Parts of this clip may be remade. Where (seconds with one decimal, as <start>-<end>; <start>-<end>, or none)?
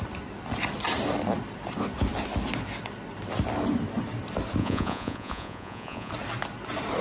4.6-6.1